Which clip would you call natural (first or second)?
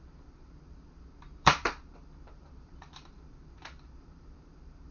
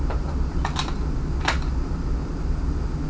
second